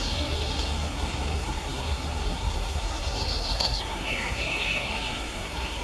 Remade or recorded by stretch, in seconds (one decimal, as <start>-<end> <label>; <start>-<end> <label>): 0.0-5.8 remade

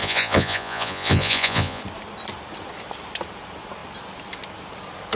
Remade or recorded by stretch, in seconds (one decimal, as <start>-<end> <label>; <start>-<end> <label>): 0.0-1.8 remade; 1.8-5.2 recorded

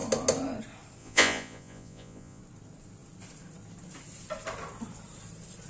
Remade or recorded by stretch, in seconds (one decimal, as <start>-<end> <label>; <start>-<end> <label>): 0.0-1.0 recorded; 1.0-2.4 remade; 2.4-5.7 recorded

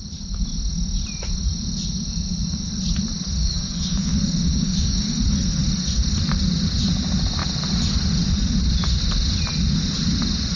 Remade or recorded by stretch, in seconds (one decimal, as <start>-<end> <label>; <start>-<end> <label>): 0.0-3.4 recorded; 3.4-4.1 remade; 4.1-4.5 recorded; 4.5-5.2 remade; 5.2-10.6 recorded

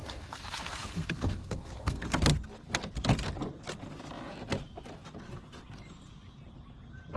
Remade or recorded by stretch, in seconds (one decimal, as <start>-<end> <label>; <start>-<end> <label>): 0.0-2.2 remade; 2.2-7.2 recorded

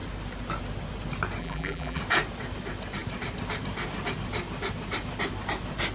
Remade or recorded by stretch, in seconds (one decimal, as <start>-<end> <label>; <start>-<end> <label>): 0.0-1.4 recorded; 1.4-2.0 remade; 2.0-5.9 recorded